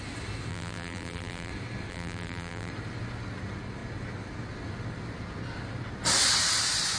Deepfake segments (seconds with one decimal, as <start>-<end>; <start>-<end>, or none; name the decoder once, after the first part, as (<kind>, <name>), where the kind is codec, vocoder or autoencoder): 0.5-1.5 (vocoder, BigVGAN v2); 1.9-2.7

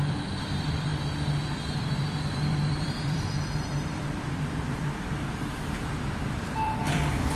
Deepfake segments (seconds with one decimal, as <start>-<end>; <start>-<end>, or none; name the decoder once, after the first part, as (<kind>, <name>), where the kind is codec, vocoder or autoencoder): 0.0-7.4 (vocoder, BigVGAN v2)